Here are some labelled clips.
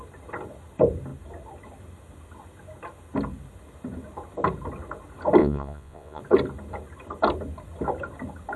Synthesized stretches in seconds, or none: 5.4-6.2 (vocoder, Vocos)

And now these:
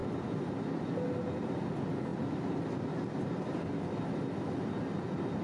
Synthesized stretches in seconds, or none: none

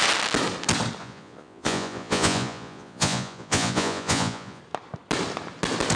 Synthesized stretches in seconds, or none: 1.0-4.6 (vocoder, Vocos)

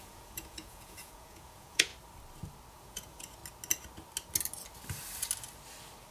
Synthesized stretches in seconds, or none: 0.0-1.9 (vocoder, Vocos); 2.7-3.4

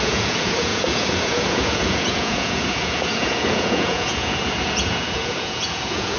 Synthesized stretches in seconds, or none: 0.0-6.2 (vocoder, Vocos)

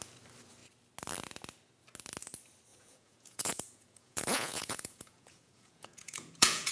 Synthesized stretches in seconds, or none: 2.7-6.7 (vocoder, Vocos)

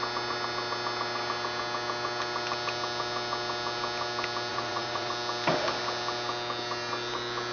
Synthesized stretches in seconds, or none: 4.5-5.1 (vocoder, Vocos)

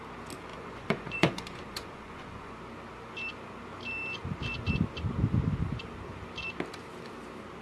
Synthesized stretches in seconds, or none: 0.5-2.5 (vocoder, Vocos)